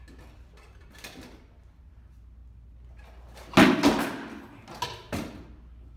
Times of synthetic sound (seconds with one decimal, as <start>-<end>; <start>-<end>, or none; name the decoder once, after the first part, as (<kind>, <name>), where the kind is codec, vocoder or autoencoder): none